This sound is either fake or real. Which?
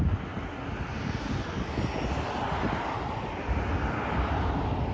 real